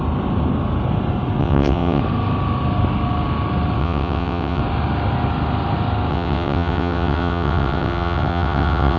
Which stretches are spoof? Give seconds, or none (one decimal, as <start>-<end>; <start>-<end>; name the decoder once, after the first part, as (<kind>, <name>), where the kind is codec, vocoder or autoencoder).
1.4-2.0 (vocoder, WaveNeXt); 3.8-4.6; 6.1-9.0